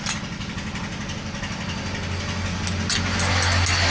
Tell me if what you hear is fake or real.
real